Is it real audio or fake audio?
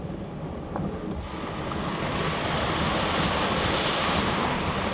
real